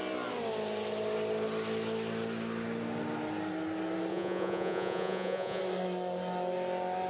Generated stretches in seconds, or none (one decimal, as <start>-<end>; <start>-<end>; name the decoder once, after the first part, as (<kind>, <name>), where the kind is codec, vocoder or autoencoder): 4.1-5.6 (vocoder, Vocos)